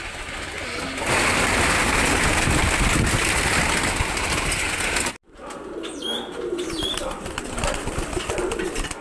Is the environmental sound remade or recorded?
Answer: recorded